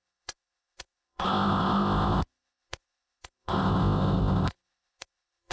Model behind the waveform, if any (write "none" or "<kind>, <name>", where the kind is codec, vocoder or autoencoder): codec, ZipCodec